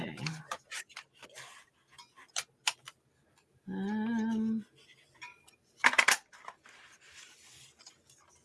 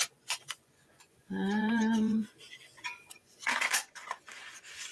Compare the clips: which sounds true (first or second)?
first